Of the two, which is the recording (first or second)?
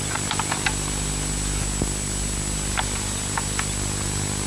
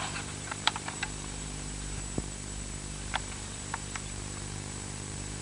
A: first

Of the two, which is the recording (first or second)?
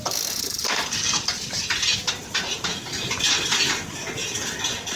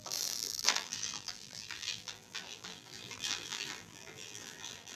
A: first